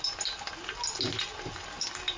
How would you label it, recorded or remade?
recorded